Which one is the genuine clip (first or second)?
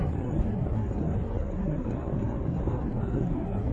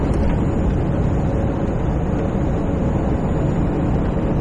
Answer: second